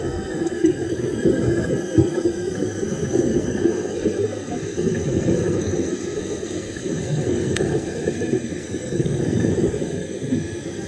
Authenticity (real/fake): fake